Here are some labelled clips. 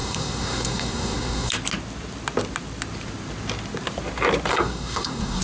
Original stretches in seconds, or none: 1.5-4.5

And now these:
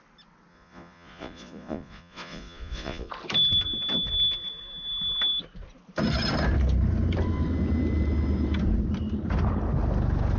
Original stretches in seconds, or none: 0.0-0.5; 3.1-10.4

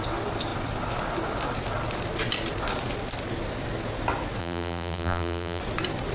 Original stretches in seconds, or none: 0.0-4.4; 5.6-6.1

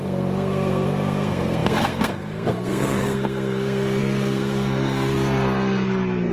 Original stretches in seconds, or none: none

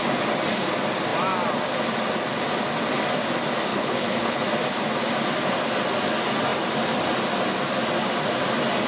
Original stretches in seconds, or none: 0.0-3.7; 4.4-8.9

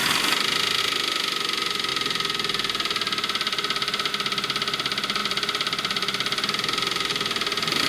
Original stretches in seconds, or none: 0.0-5.2; 7.1-7.9

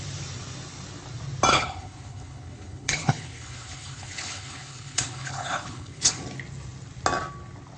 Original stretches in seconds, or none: 0.0-1.5; 6.2-7.8